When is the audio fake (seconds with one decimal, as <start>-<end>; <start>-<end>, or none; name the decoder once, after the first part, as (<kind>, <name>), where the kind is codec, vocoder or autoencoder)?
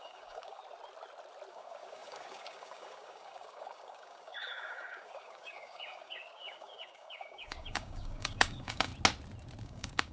0.0-0.6 (codec, DAC); 1.5-8.9; 9.6-10.1